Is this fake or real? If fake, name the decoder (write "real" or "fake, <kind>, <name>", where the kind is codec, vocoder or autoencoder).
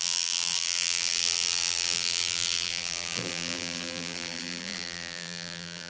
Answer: fake, vocoder, BigVGAN v2